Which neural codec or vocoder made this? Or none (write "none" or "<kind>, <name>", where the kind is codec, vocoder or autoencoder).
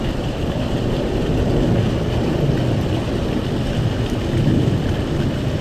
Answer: none